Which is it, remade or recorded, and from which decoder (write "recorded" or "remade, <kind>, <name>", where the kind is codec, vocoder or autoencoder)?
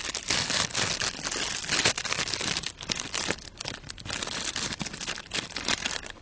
recorded